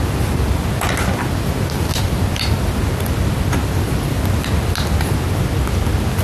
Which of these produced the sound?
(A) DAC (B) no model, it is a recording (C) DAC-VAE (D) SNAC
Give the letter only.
B